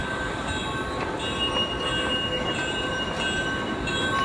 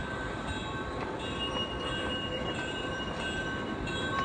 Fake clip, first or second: second